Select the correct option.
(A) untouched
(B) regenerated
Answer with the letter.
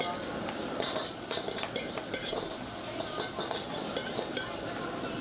A